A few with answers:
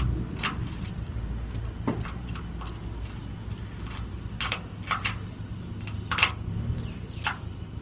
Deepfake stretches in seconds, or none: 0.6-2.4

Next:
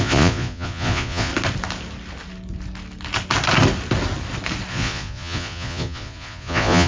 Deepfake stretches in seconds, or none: 0.0-1.3; 4.7-6.9

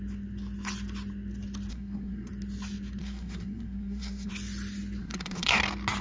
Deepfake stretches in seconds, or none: 1.7-2.3; 3.0-4.3; 5.0-5.6

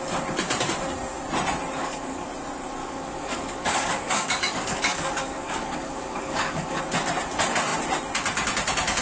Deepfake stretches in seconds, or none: 1.8-2.3; 2.8-6.8

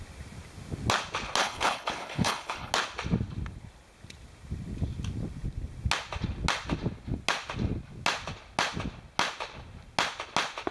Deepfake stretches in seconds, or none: 1.4-2.7

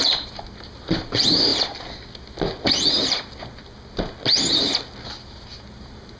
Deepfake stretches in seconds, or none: 0.0-1.5; 5.2-6.2